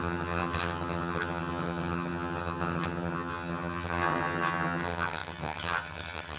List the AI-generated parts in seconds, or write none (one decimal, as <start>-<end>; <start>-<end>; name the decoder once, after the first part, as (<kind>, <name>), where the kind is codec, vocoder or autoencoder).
0.0-6.4 (vocoder, HiFi-GAN)